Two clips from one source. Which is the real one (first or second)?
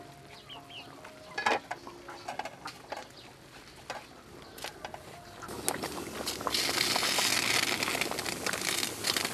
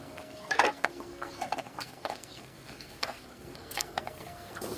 first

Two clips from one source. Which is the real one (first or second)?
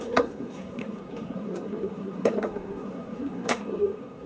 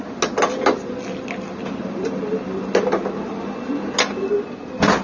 second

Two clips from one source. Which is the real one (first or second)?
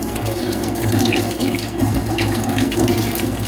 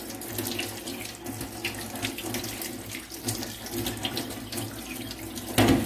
second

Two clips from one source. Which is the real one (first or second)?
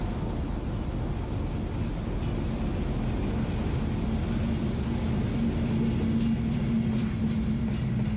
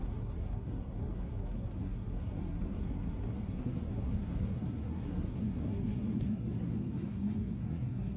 first